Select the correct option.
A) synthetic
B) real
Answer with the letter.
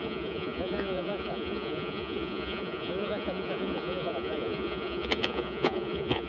A